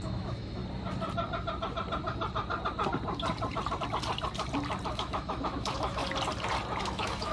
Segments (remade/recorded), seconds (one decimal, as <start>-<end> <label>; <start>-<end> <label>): 0.0-0.6 remade; 0.6-4.9 recorded; 4.9-6.0 remade; 6.0-6.8 recorded; 6.8-7.3 remade